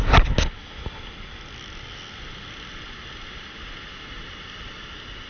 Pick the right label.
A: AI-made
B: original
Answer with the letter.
B